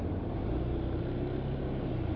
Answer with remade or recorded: recorded